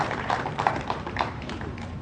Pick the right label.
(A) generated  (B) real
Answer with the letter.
A